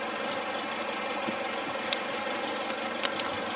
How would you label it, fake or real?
fake